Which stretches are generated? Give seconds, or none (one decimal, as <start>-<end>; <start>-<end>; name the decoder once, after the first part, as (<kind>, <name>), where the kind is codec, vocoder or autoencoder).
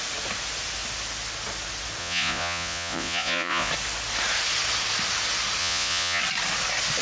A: 2.0-3.7 (vocoder, Vocos); 5.6-6.2